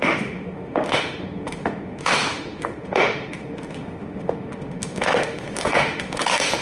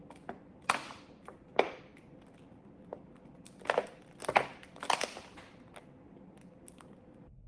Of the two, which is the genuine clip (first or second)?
second